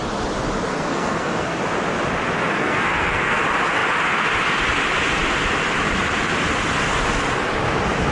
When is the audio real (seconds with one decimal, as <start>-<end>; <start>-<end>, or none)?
0.0-0.7; 1.6-2.6; 3.4-8.1